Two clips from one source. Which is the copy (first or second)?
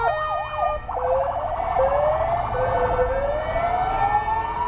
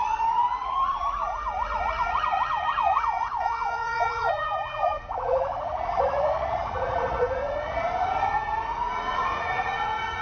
second